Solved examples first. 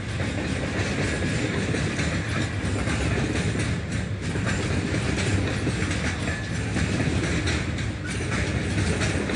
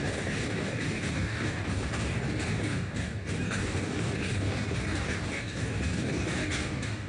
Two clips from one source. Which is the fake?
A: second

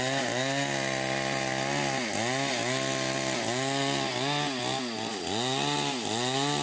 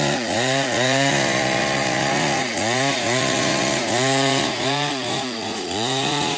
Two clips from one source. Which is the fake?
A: second